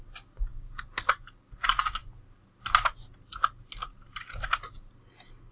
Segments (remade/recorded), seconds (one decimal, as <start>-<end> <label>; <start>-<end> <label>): 0.0-5.5 recorded